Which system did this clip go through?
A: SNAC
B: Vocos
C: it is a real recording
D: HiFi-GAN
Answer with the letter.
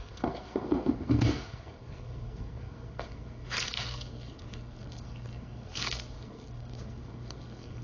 A